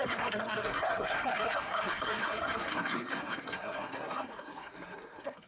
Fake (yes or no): yes